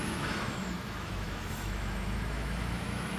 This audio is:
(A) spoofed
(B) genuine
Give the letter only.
A